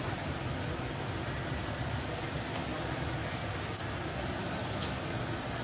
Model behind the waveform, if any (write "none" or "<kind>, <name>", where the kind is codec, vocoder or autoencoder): none